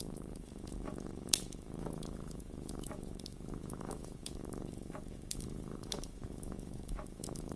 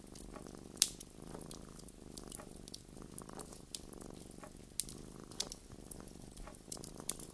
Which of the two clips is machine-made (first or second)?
first